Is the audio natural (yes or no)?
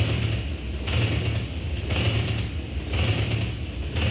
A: yes